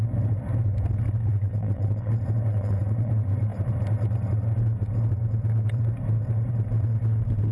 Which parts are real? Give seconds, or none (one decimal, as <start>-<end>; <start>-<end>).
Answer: 0.0-1.3; 2.1-2.5; 3.1-7.5